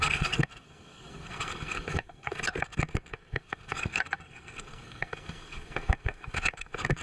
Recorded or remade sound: remade